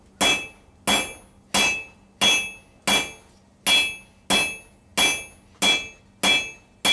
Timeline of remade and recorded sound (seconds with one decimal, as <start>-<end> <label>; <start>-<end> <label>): 0.0-6.9 recorded